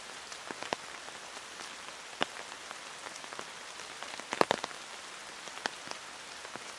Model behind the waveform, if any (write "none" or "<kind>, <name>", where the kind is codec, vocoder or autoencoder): none